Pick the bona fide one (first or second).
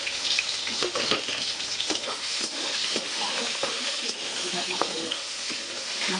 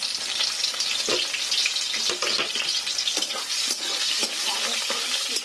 second